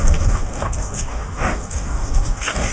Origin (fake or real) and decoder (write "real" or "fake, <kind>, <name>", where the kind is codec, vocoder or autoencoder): fake, codec, DAC